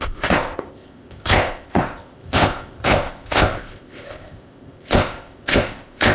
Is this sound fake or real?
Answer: fake